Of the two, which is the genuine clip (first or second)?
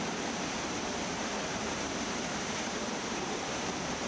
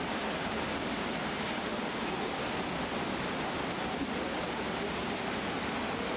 second